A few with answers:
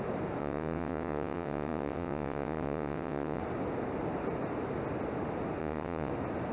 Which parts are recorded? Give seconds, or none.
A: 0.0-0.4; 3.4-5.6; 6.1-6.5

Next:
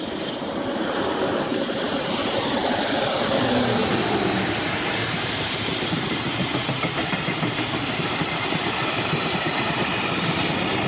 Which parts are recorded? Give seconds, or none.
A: none

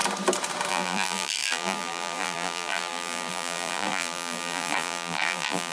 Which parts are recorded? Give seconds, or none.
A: 0.0-0.7

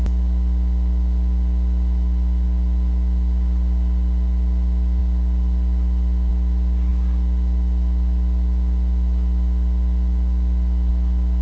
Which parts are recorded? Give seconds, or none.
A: 0.0-11.4

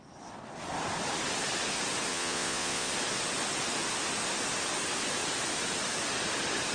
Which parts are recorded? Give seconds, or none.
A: 0.0-2.1; 2.9-6.7

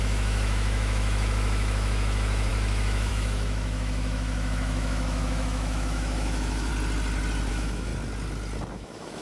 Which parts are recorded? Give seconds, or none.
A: 6.7-7.5; 7.9-8.7